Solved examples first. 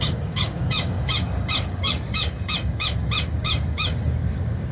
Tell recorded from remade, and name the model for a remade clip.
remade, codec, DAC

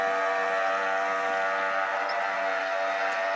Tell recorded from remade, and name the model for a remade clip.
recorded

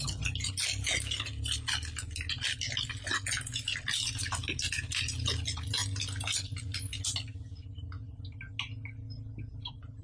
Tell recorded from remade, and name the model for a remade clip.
recorded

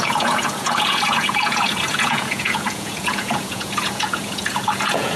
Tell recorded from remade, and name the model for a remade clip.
remade, vocoder, Vocos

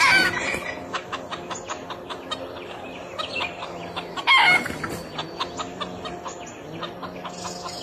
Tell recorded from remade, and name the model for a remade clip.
recorded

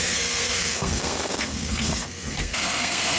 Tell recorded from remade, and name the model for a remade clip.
remade, codec, SNAC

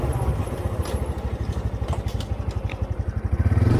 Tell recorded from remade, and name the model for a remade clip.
recorded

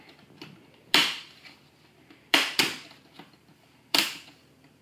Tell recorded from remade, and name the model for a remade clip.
remade, vocoder, BigVGAN v2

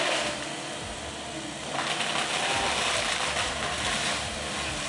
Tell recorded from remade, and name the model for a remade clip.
recorded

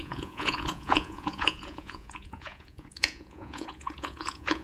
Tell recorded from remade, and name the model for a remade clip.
remade, vocoder, Vocos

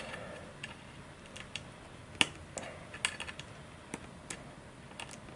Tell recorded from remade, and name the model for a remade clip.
recorded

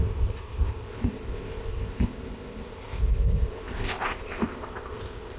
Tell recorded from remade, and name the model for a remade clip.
remade, codec, ZipCodec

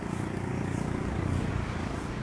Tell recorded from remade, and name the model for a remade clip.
remade, codec, DAC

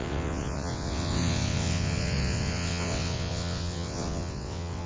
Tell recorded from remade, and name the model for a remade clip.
remade, vocoder, WaveNeXt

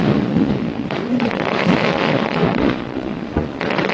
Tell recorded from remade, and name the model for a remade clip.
remade, vocoder, Vocos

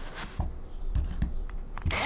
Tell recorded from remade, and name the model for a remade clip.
remade, vocoder, BigVGAN v2